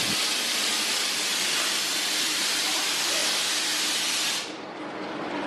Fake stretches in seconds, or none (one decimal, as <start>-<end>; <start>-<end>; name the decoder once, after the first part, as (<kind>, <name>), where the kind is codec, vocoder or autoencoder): 0.0-3.2 (vocoder, BigVGAN v2); 4.3-5.5